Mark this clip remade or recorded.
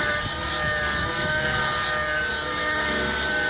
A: remade